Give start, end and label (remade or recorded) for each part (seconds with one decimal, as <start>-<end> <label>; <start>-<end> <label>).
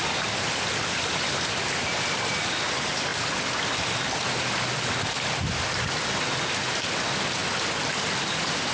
0.0-8.7 recorded